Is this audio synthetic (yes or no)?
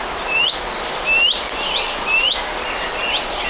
no